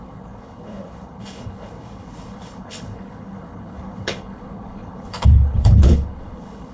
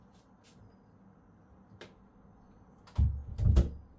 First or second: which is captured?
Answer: second